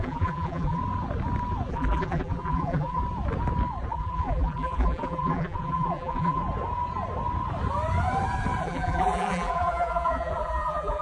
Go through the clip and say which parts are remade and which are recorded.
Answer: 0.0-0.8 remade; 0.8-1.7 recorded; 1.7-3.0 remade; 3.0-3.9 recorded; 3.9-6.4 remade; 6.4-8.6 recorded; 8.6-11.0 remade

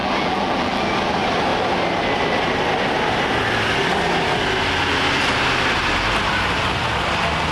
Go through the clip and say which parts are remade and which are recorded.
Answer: 0.0-0.8 remade; 0.8-7.5 recorded

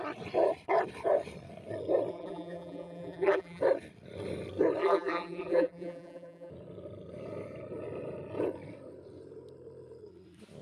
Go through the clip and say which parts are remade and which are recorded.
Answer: 0.0-2.1 recorded; 2.1-3.6 remade; 3.6-4.8 recorded; 4.8-6.5 remade; 6.5-10.6 recorded

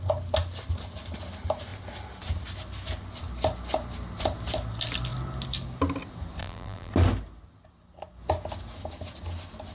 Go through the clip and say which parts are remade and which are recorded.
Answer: 0.0-6.4 recorded; 6.4-6.9 remade; 6.9-9.7 recorded

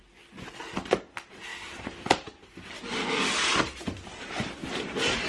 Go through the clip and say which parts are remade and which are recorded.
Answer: 0.0-1.5 recorded; 1.5-4.7 remade; 4.7-5.3 recorded

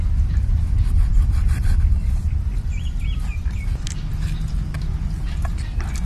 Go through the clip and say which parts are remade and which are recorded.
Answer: 0.0-6.1 recorded

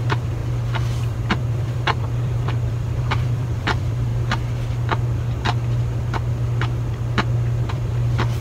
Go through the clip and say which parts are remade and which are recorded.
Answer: 0.0-0.4 remade; 0.4-1.0 recorded; 1.0-4.1 remade; 4.1-7.7 recorded; 7.7-8.4 remade